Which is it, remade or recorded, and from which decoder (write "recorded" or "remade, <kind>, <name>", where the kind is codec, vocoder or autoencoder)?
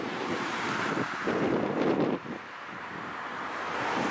remade, vocoder, BigVGAN v2